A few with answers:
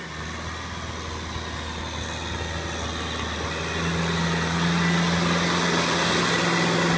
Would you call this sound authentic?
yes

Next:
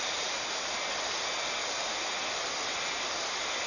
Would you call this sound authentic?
yes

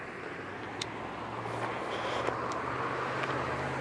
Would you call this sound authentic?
yes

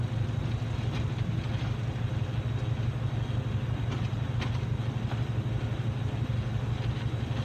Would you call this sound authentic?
yes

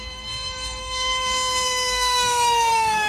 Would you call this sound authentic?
no